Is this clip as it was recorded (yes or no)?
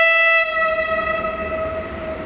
yes